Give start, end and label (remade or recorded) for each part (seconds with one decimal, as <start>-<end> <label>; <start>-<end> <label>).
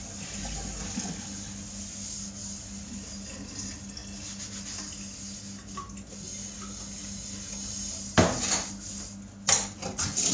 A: 0.0-10.3 recorded